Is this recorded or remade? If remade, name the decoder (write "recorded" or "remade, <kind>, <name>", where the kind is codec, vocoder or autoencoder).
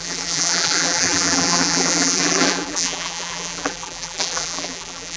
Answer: remade, vocoder, BigVGAN v2